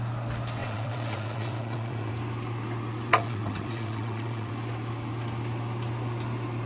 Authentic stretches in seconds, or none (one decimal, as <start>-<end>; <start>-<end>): 0.0-0.6; 2.1-3.1; 4.5-6.7